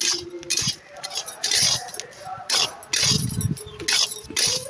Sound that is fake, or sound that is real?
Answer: real